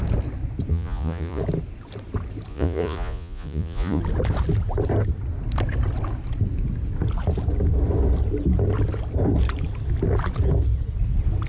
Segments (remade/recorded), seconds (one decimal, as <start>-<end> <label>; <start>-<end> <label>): 0.0-0.7 recorded; 0.7-1.4 remade; 1.4-2.5 recorded; 2.5-4.0 remade; 4.0-11.5 recorded